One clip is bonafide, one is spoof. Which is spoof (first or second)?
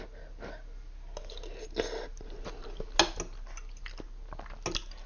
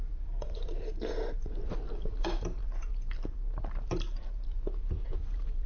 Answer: second